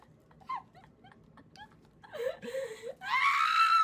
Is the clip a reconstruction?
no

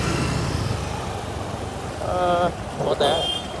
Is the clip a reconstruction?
no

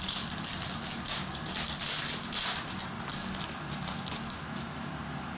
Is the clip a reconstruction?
yes